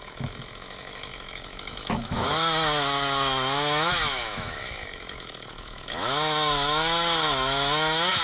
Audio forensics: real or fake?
fake